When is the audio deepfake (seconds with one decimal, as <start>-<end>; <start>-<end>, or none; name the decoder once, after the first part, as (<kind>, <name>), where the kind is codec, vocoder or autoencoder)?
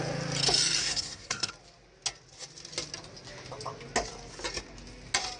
0.8-1.5 (codec, SNAC)